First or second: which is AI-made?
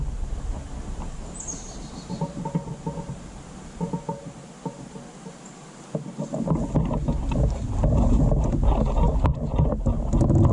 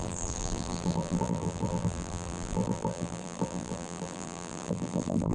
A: second